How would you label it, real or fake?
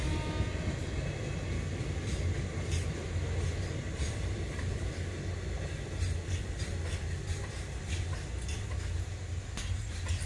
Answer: real